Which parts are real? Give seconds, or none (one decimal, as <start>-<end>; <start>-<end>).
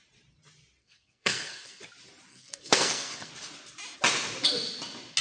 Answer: 0.0-0.8; 1.8-2.3; 3.3-5.2